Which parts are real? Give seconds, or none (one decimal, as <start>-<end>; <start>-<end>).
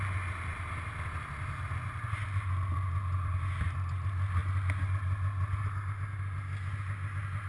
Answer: 0.0-7.5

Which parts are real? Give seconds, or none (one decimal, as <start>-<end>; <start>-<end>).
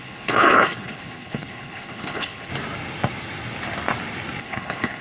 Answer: 2.5-4.4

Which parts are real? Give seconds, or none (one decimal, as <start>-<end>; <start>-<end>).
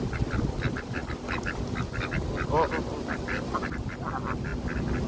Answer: 0.0-5.1